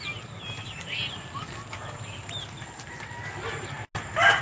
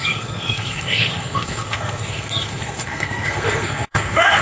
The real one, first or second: first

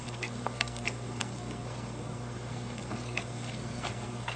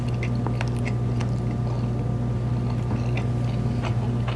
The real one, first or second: second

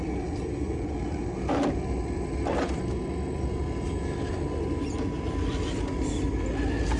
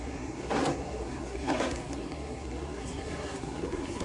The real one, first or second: first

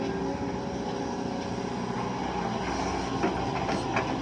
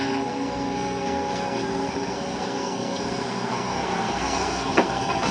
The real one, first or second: first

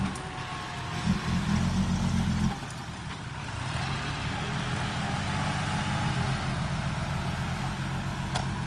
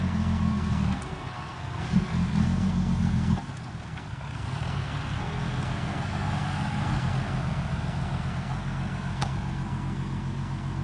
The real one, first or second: first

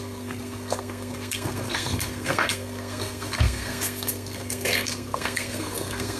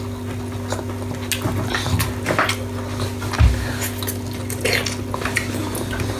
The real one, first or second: second